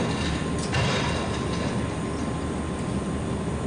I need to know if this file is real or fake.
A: real